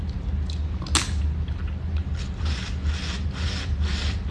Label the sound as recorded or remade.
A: recorded